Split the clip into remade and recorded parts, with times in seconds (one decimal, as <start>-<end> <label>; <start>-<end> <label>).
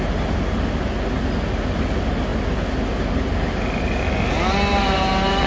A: 0.0-5.5 recorded